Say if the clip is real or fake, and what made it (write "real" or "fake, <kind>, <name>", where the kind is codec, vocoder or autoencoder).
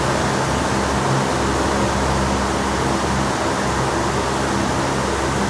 real